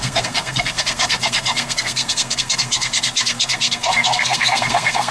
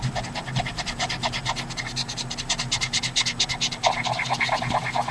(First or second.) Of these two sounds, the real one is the second